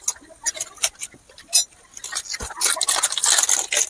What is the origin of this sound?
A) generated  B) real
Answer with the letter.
B